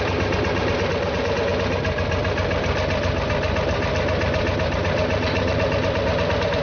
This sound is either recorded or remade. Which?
recorded